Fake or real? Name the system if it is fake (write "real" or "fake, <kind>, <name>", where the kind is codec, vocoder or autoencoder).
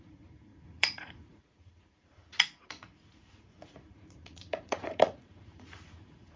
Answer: fake, vocoder, Vocos